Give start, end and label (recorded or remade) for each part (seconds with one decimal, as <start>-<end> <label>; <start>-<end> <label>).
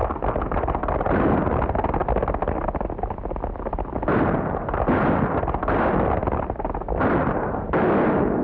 0.0-8.4 recorded